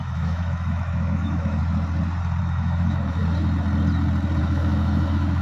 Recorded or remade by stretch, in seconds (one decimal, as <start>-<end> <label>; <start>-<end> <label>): 0.0-1.6 remade; 1.6-2.4 recorded; 2.4-3.2 remade; 3.2-4.4 recorded; 4.4-5.4 remade